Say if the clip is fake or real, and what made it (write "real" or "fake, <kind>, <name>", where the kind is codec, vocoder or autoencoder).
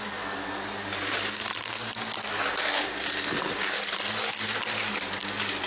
real